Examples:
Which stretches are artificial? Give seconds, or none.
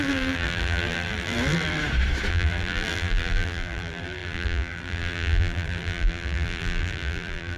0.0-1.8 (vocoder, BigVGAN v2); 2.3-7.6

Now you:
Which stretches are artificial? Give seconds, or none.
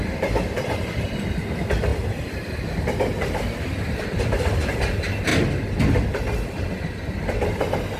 none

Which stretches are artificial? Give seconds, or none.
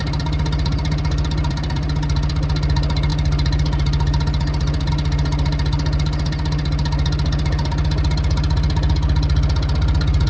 none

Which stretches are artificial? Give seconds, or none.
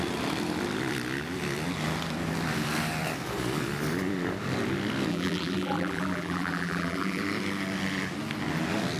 5.1-7.2 (vocoder, BigVGAN v2)